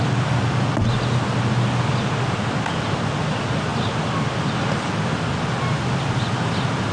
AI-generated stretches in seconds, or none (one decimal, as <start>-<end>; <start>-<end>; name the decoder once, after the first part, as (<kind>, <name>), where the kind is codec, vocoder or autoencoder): none